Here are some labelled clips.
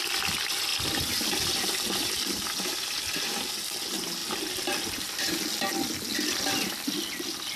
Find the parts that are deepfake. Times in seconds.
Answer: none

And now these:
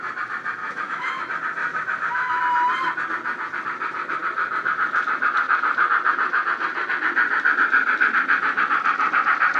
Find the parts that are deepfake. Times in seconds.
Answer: 0.6-1.2 (autoencoder, DAC-VAE); 1.6-2.4